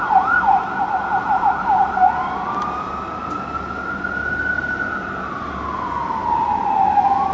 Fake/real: real